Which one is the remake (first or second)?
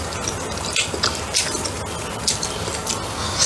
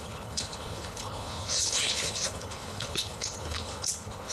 second